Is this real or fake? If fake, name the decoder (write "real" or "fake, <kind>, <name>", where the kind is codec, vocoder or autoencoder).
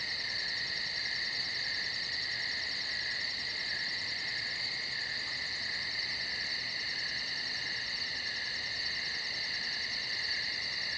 real